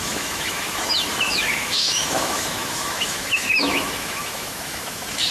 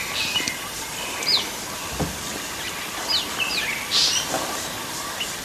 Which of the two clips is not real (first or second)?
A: first